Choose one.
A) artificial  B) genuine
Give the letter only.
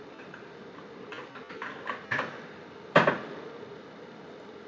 B